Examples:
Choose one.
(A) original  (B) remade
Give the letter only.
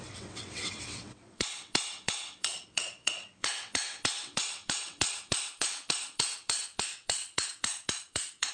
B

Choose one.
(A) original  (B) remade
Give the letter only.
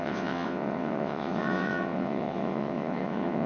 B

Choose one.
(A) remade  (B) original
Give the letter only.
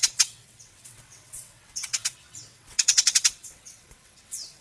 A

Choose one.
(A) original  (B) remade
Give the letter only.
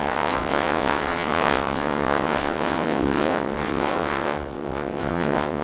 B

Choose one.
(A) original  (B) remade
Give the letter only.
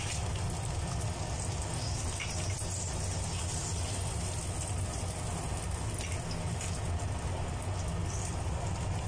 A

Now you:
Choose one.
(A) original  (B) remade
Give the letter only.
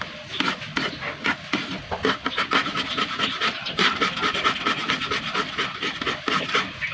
A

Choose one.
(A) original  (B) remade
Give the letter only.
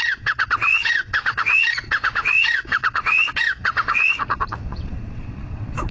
B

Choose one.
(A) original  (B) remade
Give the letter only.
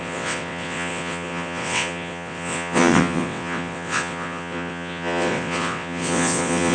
B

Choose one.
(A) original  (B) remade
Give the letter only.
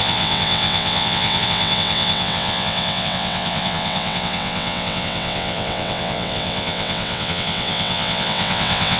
B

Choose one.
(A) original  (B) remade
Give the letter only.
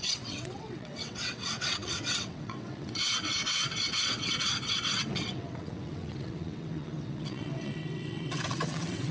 B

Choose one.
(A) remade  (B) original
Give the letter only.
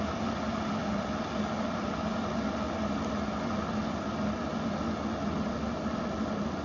B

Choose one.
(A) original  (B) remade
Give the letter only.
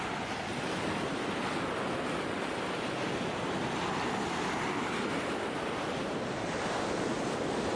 A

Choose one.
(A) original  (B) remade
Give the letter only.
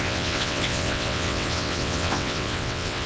B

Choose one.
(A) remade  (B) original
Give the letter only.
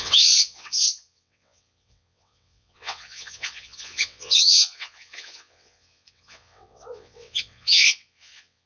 A